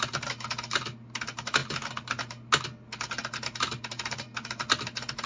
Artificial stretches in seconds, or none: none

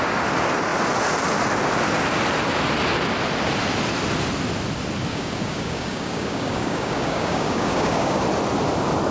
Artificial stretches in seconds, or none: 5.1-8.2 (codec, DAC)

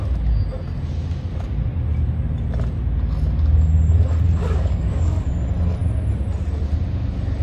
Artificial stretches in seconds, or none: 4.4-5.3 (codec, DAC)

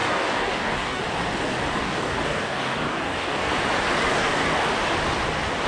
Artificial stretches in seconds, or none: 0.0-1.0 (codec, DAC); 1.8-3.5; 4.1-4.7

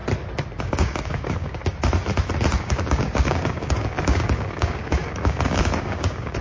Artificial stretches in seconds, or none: 0.6-1.6 (codec, DAC); 2.6-6.4